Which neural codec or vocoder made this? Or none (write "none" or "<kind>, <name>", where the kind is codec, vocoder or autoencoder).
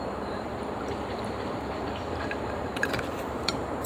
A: vocoder, BigVGAN v2